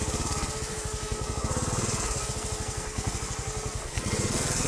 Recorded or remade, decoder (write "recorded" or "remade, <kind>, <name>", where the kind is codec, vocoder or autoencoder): remade, codec, SNAC